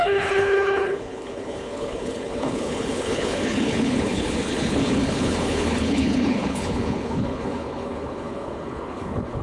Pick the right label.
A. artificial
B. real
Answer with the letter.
A